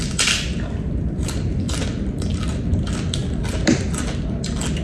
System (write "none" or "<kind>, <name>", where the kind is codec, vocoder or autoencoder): none